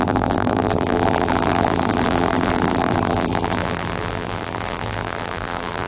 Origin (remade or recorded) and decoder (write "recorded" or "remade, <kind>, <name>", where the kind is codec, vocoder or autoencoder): remade, vocoder, BigVGAN v2